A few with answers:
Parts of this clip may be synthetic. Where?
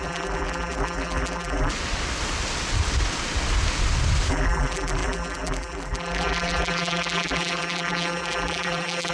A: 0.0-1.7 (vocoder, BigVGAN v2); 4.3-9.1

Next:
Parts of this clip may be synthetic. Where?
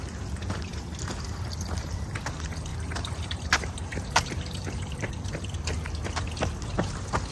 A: 2.7-5.1 (vocoder, BigVGAN v2)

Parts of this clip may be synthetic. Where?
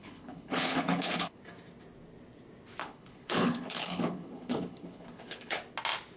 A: 0.0-1.4 (codec, HILCodec); 2.8-5.6